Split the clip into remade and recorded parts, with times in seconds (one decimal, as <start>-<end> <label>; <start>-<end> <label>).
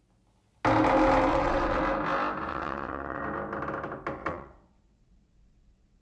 0.0-1.3 recorded; 1.3-1.8 remade; 1.8-2.5 recorded; 2.5-3.2 remade; 3.2-4.2 recorded; 4.2-6.0 remade